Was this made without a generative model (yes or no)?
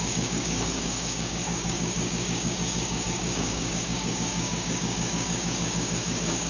no